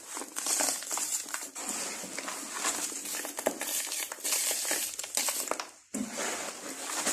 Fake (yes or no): no